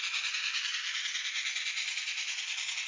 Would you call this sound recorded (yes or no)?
yes